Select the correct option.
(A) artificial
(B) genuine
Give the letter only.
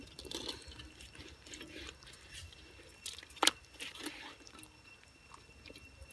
B